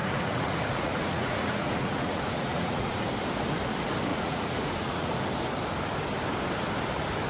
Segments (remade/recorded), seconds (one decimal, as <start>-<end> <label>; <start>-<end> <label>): 0.0-3.0 remade; 3.0-4.1 recorded; 4.1-5.1 remade; 5.1-7.3 recorded